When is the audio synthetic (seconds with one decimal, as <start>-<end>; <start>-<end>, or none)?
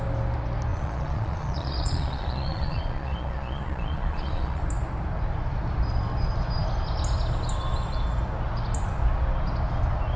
0.7-4.6